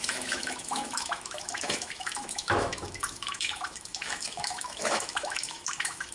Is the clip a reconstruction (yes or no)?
yes